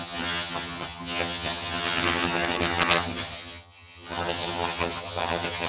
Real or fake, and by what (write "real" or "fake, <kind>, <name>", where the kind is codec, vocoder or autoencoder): fake, vocoder, HiFi-GAN